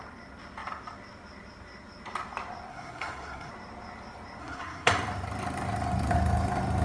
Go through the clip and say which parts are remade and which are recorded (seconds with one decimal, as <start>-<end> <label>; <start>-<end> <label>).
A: 0.0-2.7 recorded; 2.7-3.5 remade; 3.5-4.4 recorded; 4.4-4.9 remade; 4.9-6.8 recorded